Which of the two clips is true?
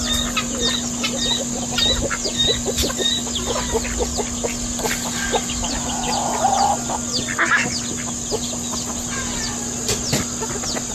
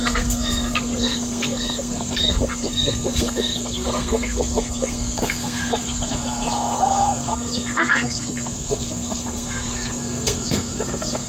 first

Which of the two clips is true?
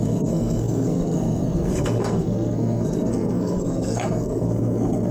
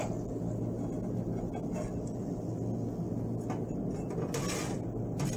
second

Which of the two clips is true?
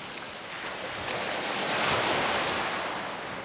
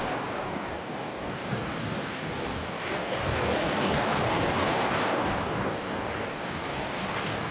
first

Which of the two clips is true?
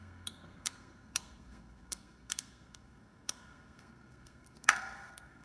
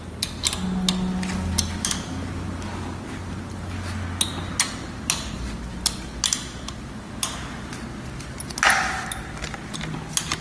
second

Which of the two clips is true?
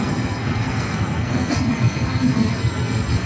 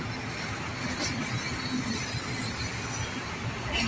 second